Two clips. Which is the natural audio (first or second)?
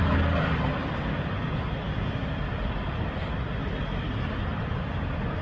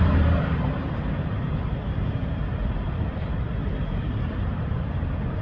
first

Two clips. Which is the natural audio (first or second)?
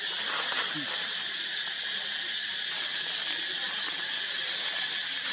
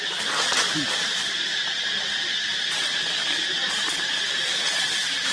first